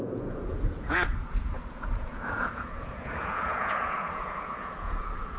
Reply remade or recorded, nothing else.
remade